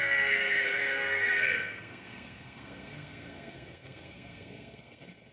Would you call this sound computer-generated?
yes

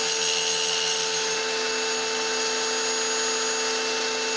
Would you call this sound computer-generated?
no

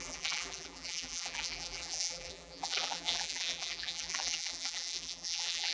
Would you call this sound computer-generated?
yes